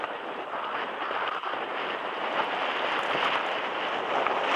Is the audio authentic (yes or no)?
no